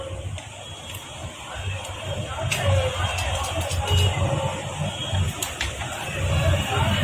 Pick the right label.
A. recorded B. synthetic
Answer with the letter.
A